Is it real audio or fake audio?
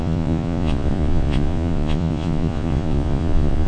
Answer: fake